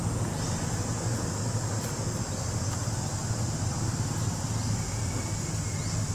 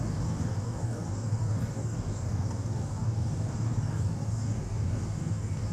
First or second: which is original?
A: first